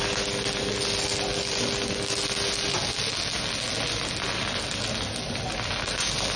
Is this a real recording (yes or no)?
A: yes